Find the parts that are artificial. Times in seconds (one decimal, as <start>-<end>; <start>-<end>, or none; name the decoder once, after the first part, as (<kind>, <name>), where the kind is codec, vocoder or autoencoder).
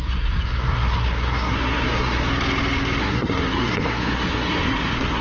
0.0-2.3 (codec, SNAC); 3.0-5.2